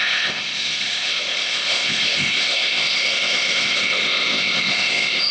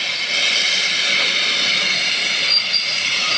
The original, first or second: second